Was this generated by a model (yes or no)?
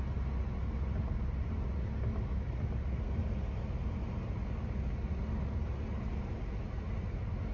no